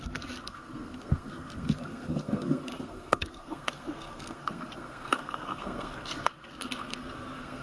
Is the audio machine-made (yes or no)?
yes